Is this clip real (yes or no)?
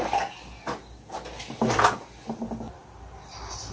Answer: yes